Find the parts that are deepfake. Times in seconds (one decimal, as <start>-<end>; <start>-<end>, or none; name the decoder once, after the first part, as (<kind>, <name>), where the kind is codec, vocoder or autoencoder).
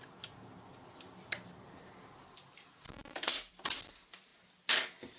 2.4-4.3 (vocoder, BigVGAN v2)